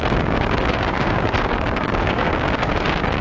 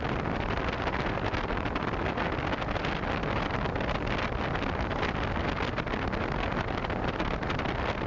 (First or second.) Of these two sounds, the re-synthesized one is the first